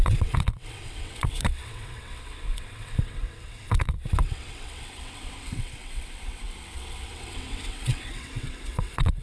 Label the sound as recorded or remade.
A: remade